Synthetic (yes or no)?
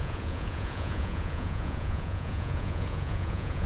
yes